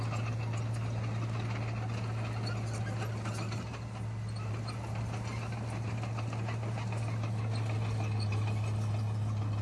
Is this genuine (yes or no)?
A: yes